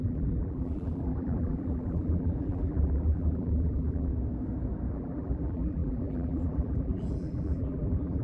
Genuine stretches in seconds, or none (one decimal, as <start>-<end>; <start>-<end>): 4.1-4.9